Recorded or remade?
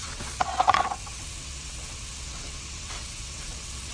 remade